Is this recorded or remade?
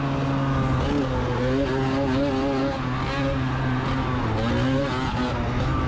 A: recorded